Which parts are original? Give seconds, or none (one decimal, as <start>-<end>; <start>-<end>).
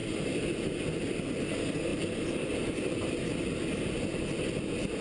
0.8-1.9; 3.4-5.0